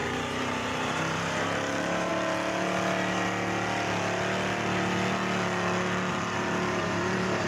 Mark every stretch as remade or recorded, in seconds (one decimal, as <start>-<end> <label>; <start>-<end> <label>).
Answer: 0.0-2.1 remade; 2.1-6.1 recorded; 6.1-7.5 remade